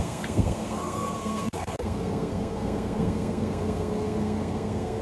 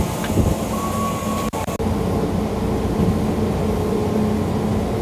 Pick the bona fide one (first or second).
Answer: second